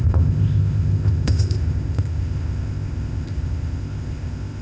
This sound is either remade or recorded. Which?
remade